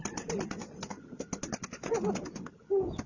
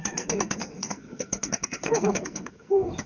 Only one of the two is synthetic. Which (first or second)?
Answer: second